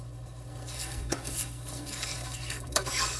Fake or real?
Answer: fake